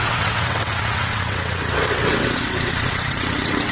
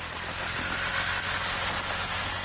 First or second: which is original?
second